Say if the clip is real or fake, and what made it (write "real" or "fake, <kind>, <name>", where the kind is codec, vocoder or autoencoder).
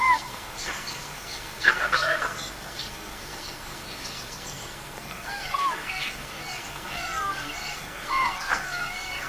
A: fake, codec, SNAC